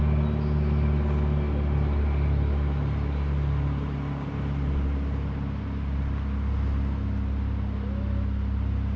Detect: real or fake real